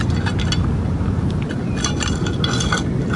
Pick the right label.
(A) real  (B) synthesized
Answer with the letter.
A